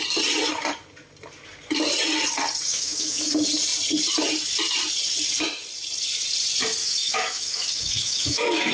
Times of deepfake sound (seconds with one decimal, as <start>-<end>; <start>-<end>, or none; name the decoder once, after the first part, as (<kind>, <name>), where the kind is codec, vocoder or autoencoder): 2.7-3.3 (autoencoder, DAC-VAE); 6.8-8.7

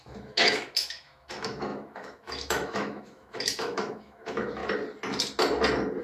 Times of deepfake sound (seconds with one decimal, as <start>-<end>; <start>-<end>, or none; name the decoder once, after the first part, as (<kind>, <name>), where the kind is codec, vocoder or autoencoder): 0.0-4.6 (autoencoder, DAC-VAE)

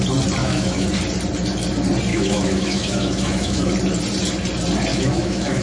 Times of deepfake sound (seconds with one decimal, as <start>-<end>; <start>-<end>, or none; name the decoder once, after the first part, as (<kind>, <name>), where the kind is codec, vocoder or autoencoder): 0.4-0.9 (autoencoder, DAC-VAE); 2.1-3.7; 4.9-5.6

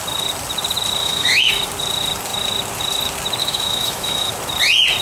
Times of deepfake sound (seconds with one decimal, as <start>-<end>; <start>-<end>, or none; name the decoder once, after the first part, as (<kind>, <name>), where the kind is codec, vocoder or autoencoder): 1.0-1.5 (autoencoder, DAC-VAE); 3.4-4.3

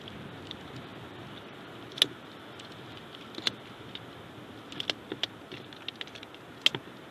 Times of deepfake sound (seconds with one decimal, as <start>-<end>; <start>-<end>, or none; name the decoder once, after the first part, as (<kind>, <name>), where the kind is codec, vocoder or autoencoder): none

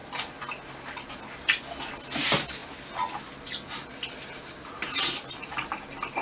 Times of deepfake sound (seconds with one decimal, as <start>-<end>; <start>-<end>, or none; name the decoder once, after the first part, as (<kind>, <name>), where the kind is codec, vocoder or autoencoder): none

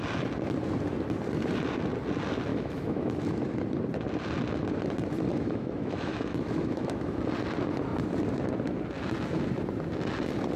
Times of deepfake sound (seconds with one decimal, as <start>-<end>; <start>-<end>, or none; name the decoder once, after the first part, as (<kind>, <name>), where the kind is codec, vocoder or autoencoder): 2.5-3.1 (autoencoder, DAC-VAE); 5.3-7.2